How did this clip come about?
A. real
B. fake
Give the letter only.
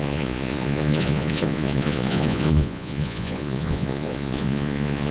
B